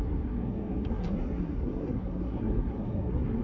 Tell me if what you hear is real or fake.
fake